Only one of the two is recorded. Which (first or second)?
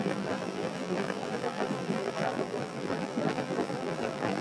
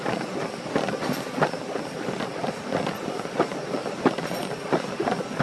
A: second